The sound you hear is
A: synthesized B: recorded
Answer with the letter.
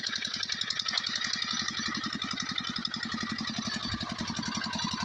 B